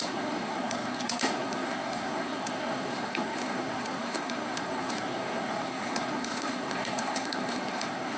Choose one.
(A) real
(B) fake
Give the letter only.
B